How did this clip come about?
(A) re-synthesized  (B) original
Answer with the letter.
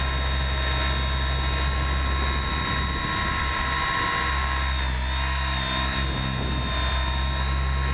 B